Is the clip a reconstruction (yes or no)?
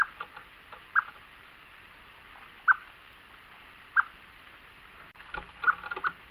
no